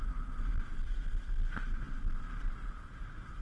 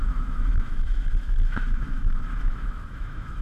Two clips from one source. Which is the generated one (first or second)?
second